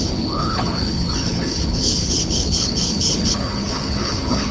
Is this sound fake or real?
fake